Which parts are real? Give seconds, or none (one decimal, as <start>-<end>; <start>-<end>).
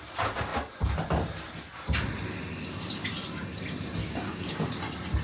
0.0-4.0; 4.7-5.2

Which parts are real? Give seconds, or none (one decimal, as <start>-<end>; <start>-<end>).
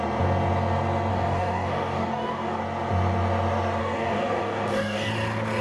0.0-1.1; 2.6-3.8; 5.1-5.6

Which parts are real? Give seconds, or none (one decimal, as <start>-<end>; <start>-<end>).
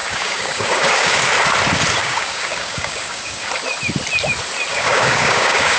1.3-2.0; 3.5-4.7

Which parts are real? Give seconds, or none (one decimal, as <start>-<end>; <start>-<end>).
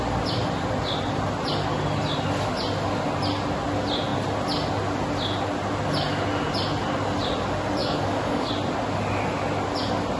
0.0-7.8; 8.5-10.2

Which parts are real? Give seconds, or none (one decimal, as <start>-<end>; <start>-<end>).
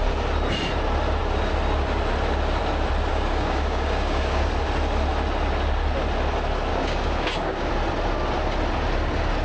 0.0-3.1; 4.5-6.7; 7.7-9.4